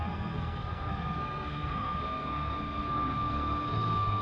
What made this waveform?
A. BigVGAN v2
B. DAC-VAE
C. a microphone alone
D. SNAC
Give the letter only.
D